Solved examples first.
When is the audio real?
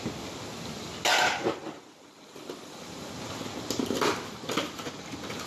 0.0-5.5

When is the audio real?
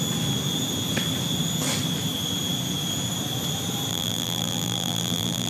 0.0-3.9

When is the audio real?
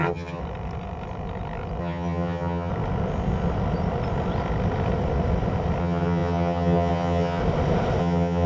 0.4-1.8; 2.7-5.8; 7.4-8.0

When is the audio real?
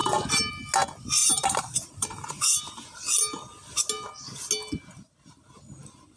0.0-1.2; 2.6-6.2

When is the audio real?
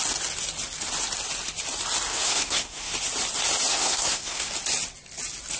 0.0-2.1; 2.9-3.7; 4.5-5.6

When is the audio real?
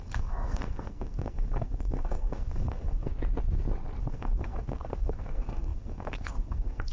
3.1-4.0